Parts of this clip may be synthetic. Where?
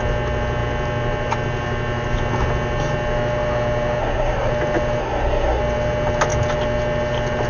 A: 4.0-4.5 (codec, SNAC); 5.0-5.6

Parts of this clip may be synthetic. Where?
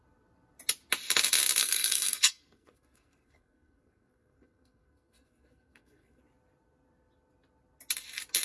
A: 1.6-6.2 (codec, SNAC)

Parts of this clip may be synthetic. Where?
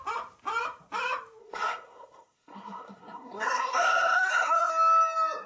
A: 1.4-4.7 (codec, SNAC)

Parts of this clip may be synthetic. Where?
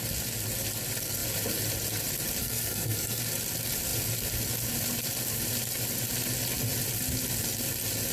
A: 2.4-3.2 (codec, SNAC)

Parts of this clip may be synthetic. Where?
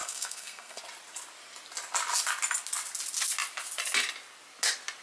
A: 0.0-0.8 (codec, SNAC)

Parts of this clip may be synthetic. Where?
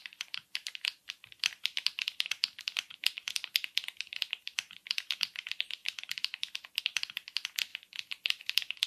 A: none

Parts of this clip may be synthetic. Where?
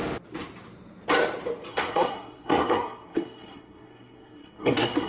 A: 1.7-5.1 (codec, SNAC)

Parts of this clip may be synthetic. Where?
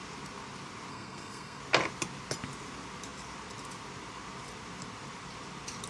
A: 0.9-1.6 (codec, SNAC)